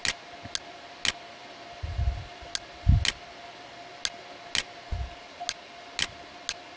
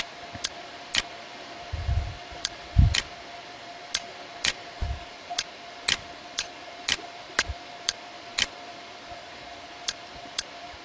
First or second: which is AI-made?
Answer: second